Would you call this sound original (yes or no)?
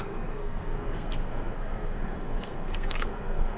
no